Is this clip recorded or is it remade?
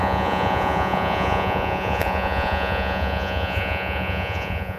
remade